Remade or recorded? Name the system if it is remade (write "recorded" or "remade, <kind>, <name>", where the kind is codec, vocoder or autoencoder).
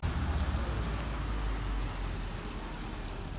recorded